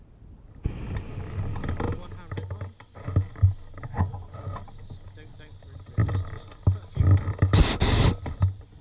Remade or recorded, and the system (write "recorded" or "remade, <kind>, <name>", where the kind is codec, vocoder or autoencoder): recorded